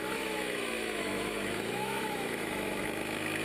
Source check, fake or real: fake